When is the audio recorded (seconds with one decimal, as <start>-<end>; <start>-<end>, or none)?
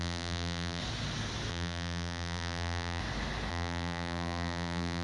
0.8-1.5; 3.0-3.5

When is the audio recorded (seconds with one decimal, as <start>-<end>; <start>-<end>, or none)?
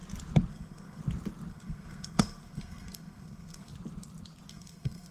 0.0-0.5; 1.0-1.5; 3.7-4.5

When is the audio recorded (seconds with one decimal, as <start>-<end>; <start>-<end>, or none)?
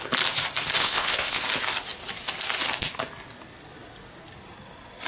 0.0-0.8; 1.4-5.1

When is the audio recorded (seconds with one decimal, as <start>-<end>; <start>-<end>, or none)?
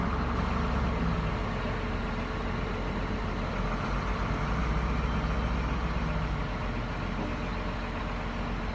0.0-8.7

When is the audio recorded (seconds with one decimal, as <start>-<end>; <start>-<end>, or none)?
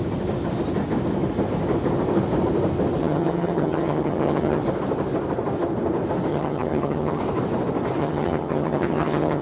0.0-3.0; 4.6-6.3; 7.2-8.0